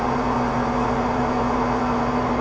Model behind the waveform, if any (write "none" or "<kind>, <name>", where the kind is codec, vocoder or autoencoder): none